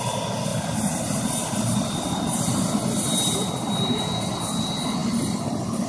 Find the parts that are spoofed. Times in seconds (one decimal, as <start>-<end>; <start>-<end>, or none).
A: 0.5-4.0; 5.0-5.9